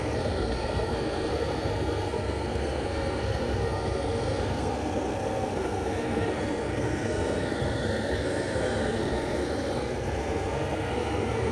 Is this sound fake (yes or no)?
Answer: yes